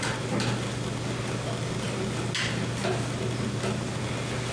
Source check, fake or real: real